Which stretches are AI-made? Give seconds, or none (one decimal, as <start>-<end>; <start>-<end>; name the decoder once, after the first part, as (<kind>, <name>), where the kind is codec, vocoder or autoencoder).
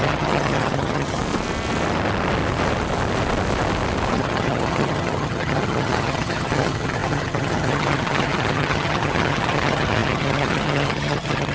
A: 0.0-1.2 (vocoder, HiFi-GAN); 4.1-11.5